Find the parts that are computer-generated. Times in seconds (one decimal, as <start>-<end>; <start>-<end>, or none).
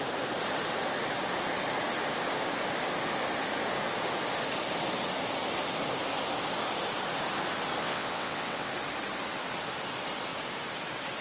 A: 7.8-8.7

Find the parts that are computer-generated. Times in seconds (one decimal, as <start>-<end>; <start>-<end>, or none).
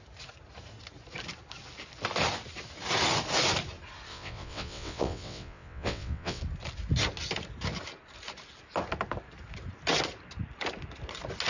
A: 4.1-6.4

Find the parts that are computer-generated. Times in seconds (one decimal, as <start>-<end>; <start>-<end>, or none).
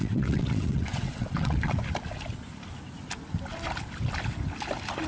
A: 0.0-1.8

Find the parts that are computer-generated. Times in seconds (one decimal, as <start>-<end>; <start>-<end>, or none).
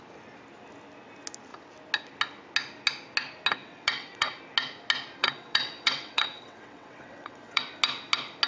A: 3.6-4.4; 5.2-7.6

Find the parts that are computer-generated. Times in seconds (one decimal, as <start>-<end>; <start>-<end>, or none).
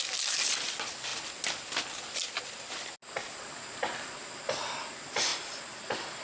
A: none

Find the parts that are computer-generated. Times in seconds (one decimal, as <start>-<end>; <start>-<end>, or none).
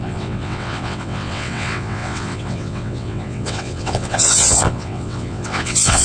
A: 0.0-6.0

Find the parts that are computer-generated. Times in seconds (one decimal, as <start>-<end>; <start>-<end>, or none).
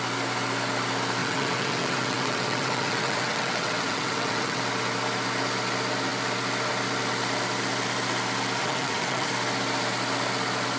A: 1.2-4.6; 8.6-9.3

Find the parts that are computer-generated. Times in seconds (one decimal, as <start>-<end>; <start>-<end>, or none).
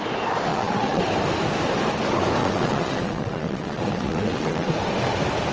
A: 0.5-1.0; 2.4-4.7